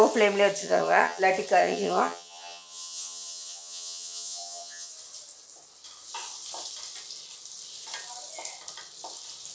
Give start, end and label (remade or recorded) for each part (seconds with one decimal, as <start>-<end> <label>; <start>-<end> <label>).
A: 0.0-0.6 recorded; 0.6-1.2 remade; 1.2-1.6 recorded; 1.6-4.9 remade; 4.9-9.5 recorded